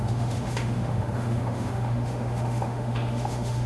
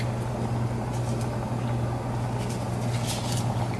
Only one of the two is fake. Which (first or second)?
first